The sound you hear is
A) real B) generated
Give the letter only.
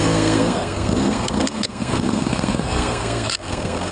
B